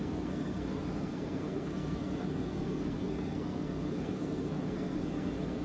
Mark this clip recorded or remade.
remade